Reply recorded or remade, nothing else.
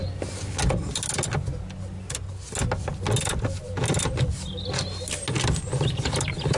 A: recorded